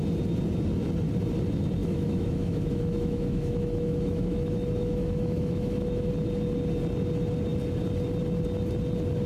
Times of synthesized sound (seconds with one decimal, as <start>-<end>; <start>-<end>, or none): 1.8-6.1